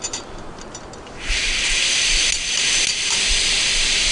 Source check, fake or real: real